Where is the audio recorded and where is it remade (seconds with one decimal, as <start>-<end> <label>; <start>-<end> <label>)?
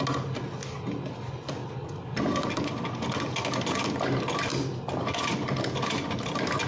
0.0-6.7 recorded